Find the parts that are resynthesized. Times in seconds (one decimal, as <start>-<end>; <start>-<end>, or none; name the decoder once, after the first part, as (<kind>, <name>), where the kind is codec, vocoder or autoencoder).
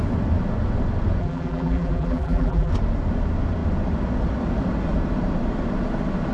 1.2-2.7 (vocoder, BigVGAN v2)